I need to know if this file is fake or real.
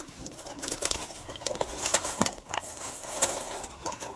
fake